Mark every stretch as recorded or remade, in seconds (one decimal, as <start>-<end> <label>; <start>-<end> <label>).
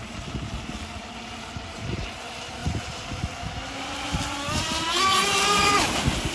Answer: 0.0-6.3 recorded